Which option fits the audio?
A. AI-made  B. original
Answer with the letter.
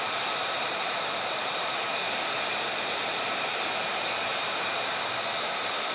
A